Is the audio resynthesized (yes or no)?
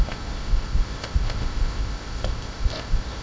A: yes